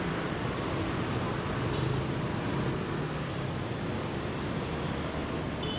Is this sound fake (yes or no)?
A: no